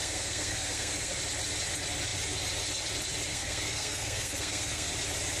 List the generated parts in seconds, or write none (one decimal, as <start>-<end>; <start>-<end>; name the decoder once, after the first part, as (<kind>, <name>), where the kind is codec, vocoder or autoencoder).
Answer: 0.0-1.1 (codec, SNAC); 3.3-4.9